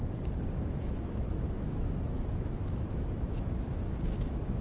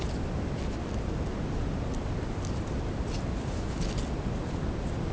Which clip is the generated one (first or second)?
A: first